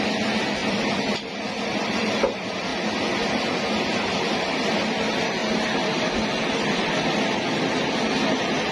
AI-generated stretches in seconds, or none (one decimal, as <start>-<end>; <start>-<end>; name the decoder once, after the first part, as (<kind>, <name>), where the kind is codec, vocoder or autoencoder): 0.0-2.7 (vocoder, BigVGAN v2); 4.4-5.4; 5.9-8.7